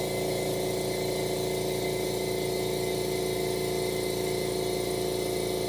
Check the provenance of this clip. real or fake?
real